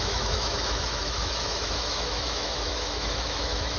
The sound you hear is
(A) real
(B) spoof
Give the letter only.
B